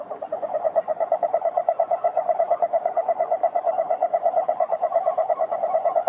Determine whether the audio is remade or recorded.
remade